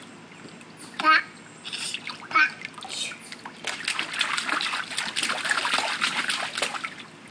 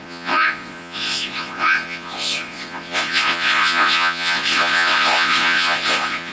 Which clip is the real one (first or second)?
first